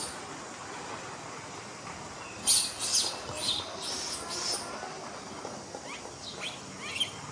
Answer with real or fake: real